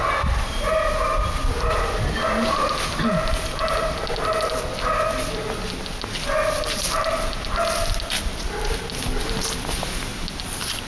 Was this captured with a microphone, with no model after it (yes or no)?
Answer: yes